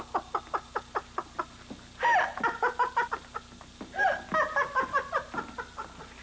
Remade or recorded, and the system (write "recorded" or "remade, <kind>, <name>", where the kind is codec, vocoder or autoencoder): recorded